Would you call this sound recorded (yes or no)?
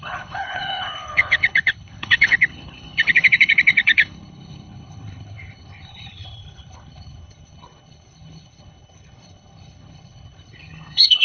no